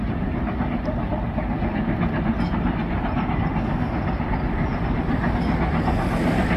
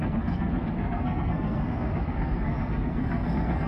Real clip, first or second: first